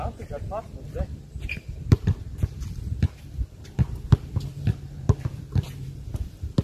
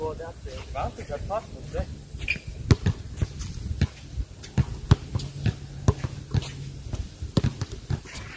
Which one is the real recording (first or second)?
second